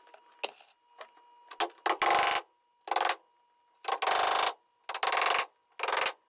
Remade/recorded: recorded